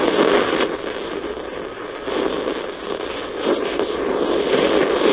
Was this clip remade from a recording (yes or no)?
no